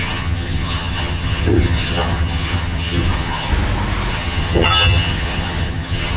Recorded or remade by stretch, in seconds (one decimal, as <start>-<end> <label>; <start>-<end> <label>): 0.0-3.5 remade; 3.5-4.1 recorded; 4.1-6.2 remade

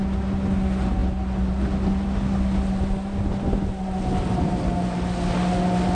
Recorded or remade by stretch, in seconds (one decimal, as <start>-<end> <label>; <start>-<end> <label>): 0.0-5.9 recorded

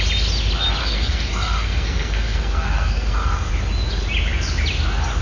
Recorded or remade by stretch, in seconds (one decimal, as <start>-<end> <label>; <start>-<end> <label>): 0.0-0.8 recorded; 0.8-3.5 remade; 3.5-5.2 recorded

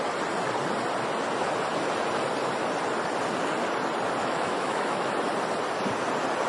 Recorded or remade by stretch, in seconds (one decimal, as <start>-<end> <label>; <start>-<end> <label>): 0.0-4.2 recorded; 4.2-5.1 remade; 5.1-6.5 recorded